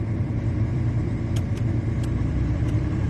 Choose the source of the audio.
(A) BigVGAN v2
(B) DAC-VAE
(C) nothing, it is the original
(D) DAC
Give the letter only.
A